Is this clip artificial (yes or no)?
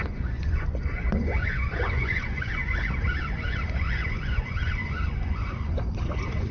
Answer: yes